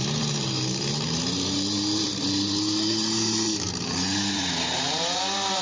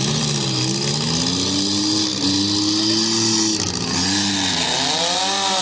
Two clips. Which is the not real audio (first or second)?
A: first